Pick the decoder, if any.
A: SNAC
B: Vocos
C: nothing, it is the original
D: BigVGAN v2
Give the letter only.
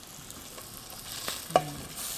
C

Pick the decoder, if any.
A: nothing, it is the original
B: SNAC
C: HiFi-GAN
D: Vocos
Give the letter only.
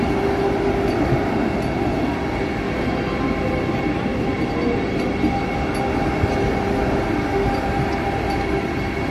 A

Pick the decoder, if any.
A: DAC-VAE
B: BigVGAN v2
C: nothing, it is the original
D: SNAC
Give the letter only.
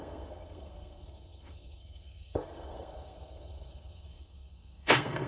D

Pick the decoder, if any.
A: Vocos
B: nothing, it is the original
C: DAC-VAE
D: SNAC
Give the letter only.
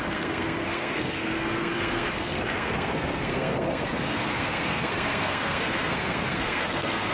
D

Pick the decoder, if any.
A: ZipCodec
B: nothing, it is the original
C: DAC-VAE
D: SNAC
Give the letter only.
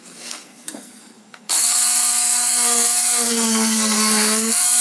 D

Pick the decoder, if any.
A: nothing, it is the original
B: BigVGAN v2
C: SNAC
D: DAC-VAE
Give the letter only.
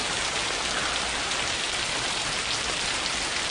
A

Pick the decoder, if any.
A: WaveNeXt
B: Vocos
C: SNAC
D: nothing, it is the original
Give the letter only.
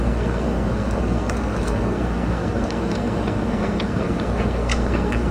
C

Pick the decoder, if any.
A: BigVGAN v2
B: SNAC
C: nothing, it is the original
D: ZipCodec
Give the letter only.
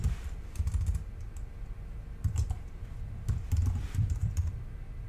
C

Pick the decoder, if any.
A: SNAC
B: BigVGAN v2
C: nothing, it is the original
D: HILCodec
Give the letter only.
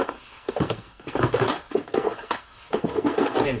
A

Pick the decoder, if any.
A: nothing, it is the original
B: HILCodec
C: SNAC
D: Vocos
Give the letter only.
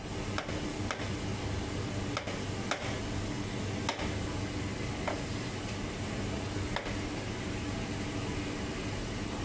A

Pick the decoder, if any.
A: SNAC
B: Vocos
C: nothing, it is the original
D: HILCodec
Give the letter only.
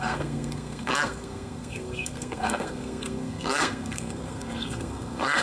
A